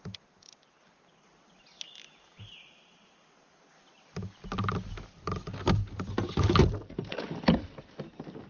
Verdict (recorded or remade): recorded